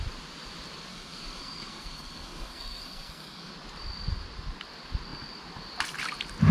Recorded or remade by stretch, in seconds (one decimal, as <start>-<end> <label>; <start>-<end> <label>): 0.0-0.9 recorded; 0.9-3.5 remade; 3.5-6.5 recorded